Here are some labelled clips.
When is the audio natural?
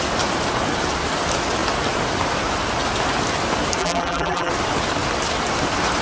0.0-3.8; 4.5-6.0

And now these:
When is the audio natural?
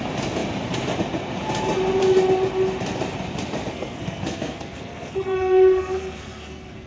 0.0-3.7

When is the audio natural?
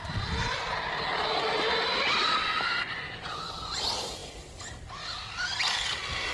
0.0-2.4; 3.8-6.3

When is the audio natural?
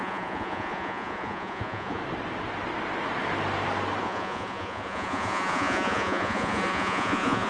2.0-4.0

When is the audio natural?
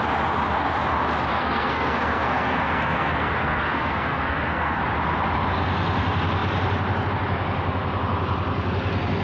0.0-1.3; 4.8-9.2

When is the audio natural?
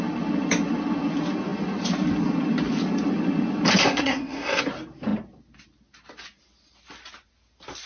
0.0-3.8; 4.6-7.9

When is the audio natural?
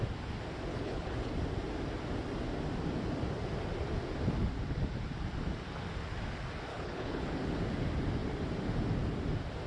0.0-0.7; 1.3-6.7; 7.3-9.7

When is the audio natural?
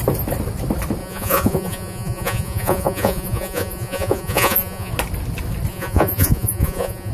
0.0-1.0; 4.9-5.7